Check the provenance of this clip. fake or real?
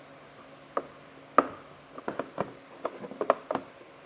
real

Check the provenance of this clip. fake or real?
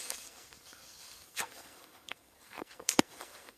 fake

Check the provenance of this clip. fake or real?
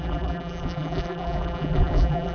fake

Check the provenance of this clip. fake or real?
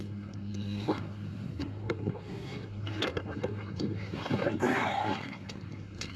fake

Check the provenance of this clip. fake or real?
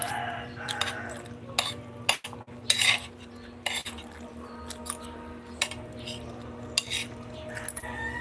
real